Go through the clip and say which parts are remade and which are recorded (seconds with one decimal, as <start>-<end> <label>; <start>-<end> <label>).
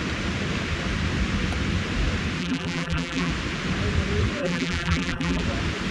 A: 0.0-2.4 recorded; 2.4-3.3 remade; 3.3-4.4 recorded; 4.4-5.4 remade; 5.4-5.9 recorded